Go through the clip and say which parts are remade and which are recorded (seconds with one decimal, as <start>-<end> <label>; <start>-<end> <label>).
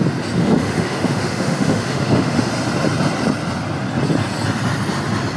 0.0-0.4 recorded; 0.4-2.5 remade; 2.5-5.4 recorded